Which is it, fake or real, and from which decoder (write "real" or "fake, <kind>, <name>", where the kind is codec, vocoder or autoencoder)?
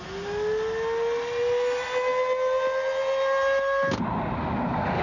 real